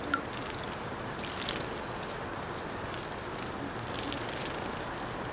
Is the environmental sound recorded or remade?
recorded